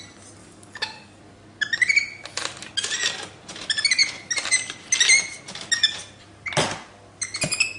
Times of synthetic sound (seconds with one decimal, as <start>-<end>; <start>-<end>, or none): 0.4-1.2